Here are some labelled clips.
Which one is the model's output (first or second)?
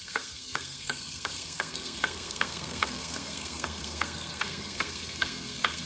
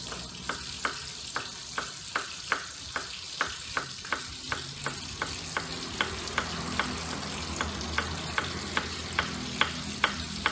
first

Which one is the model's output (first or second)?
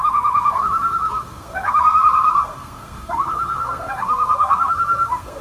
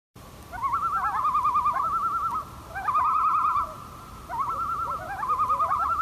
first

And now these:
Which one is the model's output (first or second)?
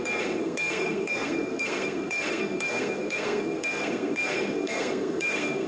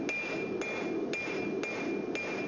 first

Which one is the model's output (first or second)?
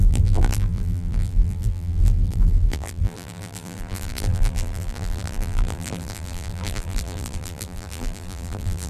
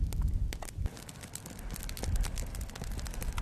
first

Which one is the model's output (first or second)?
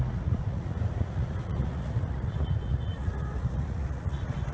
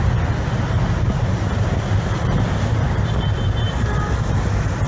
first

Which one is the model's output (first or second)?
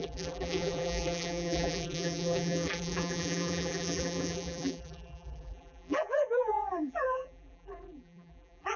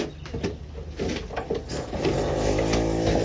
first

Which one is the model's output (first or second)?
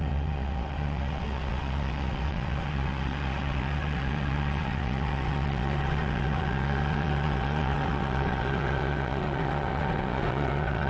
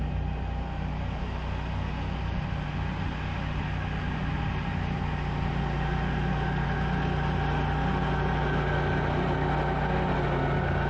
first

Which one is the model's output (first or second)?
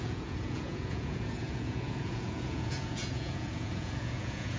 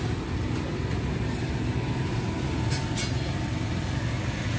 first